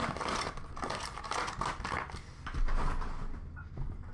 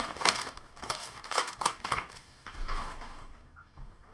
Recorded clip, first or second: first